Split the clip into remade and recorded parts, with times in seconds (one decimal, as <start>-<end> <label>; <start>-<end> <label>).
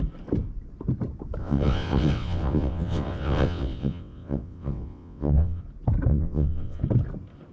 0.0-1.4 recorded; 1.4-5.6 remade; 5.6-6.1 recorded; 6.1-6.8 remade; 6.8-7.5 recorded